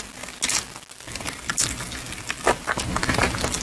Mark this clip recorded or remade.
recorded